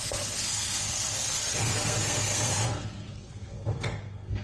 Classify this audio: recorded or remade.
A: remade